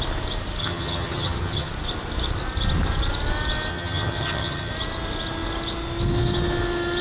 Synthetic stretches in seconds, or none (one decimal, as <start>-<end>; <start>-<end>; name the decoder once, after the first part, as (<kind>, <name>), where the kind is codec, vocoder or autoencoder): 0.6-1.7 (vocoder, HiFi-GAN); 3.7-4.7